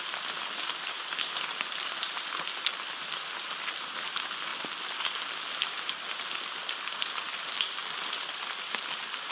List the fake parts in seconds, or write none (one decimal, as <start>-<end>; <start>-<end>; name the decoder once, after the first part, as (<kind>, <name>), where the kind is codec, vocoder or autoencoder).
none